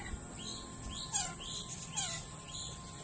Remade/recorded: recorded